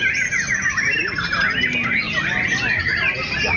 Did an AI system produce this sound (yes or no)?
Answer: no